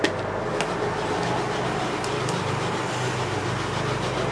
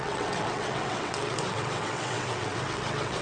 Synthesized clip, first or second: second